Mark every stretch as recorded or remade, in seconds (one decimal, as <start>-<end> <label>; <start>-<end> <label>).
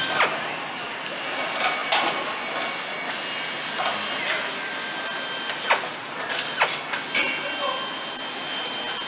0.0-9.1 recorded